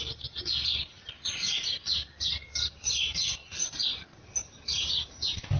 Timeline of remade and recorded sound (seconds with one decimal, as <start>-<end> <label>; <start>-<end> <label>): 0.0-5.6 recorded